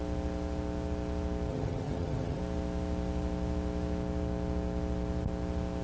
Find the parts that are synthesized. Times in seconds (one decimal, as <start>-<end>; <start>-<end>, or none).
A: 1.5-2.4